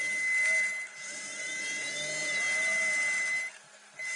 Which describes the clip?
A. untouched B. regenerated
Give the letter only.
A